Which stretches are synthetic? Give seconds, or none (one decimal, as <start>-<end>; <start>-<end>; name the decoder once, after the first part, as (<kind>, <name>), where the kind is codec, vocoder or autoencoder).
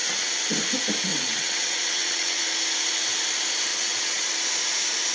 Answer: 0.0-0.6 (vocoder, WaveNeXt); 1.1-2.4; 3.7-4.3